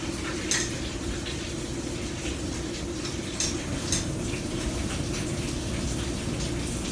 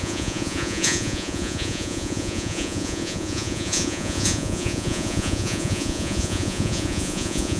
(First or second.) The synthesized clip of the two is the second